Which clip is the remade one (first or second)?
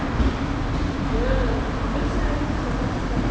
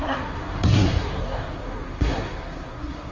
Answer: second